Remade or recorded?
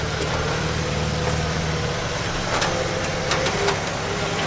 remade